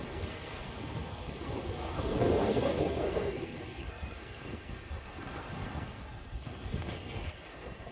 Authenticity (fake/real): fake